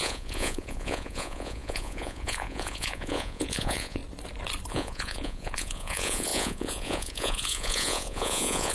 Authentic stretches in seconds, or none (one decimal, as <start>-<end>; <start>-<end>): 4.0-4.7